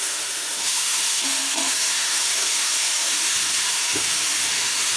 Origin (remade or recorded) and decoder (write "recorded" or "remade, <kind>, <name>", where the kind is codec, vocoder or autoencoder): remade, autoencoder, DAC-VAE